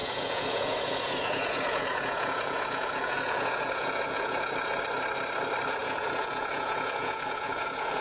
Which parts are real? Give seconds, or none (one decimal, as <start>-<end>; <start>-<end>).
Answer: 4.8-5.8